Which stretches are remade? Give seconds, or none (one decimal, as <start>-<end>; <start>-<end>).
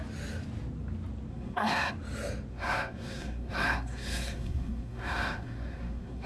1.3-1.9; 2.5-6.3